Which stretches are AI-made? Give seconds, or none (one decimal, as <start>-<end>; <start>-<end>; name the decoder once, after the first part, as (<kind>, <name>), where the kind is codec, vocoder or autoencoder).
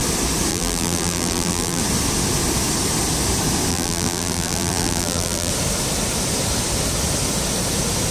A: 0.5-1.8 (vocoder, BigVGAN v2); 3.7-5.5